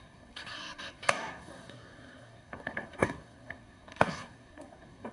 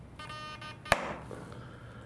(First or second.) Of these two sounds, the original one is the second